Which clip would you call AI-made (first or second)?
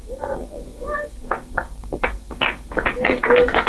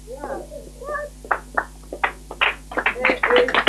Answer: first